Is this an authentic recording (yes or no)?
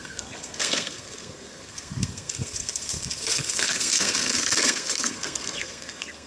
no